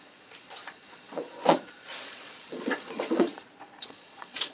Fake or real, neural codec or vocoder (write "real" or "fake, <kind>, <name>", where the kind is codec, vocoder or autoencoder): fake, vocoder, Vocos